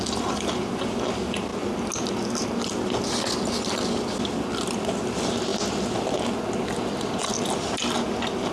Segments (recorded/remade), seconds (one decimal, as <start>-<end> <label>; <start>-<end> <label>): 0.0-8.5 recorded